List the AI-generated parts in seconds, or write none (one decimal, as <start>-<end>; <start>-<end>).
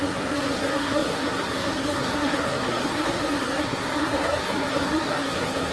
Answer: 0.0-5.7